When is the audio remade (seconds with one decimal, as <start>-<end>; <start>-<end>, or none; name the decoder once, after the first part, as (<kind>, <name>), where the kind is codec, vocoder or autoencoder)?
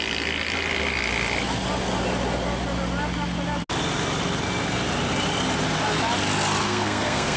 6.6-7.4 (codec, SNAC)